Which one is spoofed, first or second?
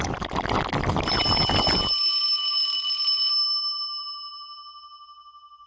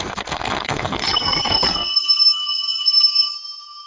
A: second